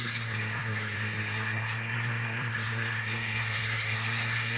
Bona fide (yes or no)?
no